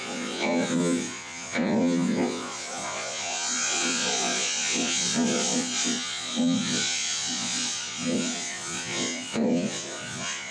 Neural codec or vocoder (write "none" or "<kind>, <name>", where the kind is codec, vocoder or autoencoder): vocoder, Vocos